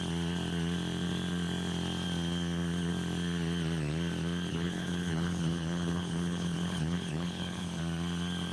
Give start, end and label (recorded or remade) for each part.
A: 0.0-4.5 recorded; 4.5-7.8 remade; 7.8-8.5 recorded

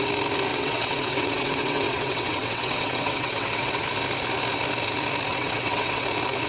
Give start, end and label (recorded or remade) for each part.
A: 0.0-0.5 recorded; 0.5-3.8 remade; 3.8-5.3 recorded; 5.3-6.1 remade; 6.1-6.5 recorded

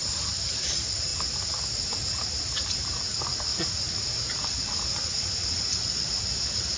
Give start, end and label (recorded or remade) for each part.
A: 0.0-3.5 recorded; 3.5-4.3 remade; 4.3-5.0 recorded; 5.0-5.6 remade; 5.6-6.8 recorded

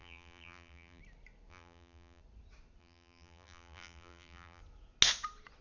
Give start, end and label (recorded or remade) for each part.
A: 0.0-1.0 remade; 1.0-1.5 recorded; 1.5-2.2 remade; 2.2-2.8 recorded; 2.8-4.6 remade; 4.6-5.6 recorded

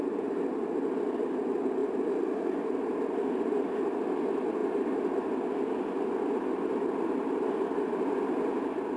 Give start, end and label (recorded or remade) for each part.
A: 0.0-9.0 recorded